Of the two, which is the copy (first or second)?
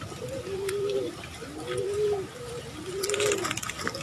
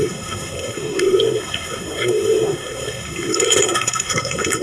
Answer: second